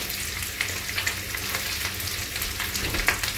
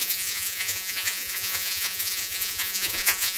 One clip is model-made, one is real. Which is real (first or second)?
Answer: first